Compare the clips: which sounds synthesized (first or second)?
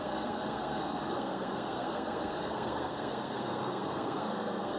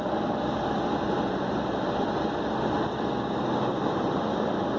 first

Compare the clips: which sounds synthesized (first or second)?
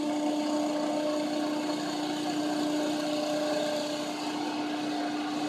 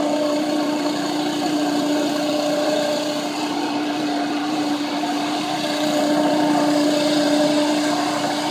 second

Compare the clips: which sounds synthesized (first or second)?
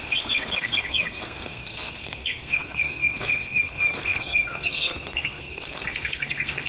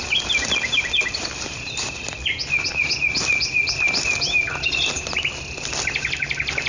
first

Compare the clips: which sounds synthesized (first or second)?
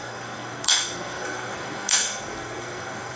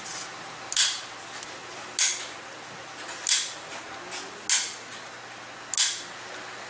first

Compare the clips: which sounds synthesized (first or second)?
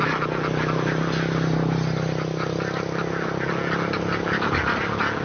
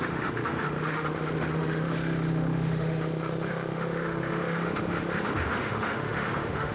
second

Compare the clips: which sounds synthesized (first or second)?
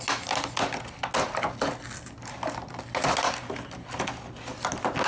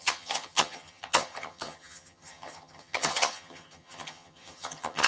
second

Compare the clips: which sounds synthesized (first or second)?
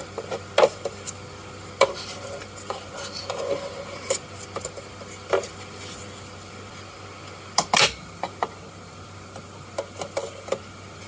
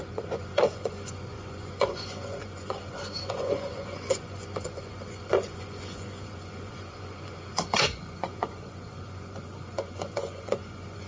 second